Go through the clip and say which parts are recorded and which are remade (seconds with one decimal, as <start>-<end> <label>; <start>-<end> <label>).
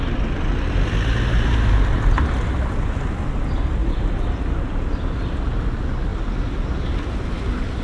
0.0-7.8 recorded